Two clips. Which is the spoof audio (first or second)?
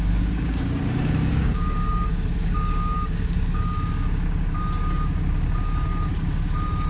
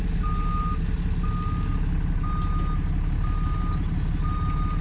first